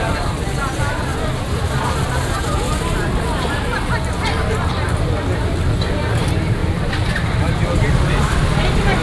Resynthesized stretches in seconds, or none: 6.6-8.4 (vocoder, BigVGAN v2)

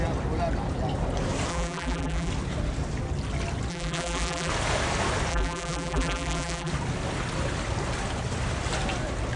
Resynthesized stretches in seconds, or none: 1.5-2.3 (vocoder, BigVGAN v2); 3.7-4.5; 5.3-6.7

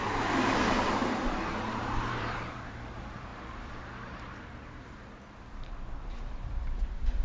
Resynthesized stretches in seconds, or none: 0.0-7.2 (vocoder, BigVGAN v2)

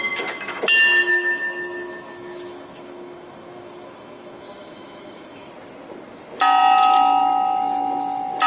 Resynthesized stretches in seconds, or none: 1.1-5.5 (autoencoder, DAC-VAE)

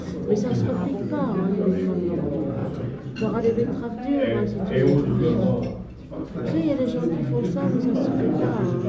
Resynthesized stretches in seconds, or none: 2.6-3.4 (vocoder, BigVGAN v2)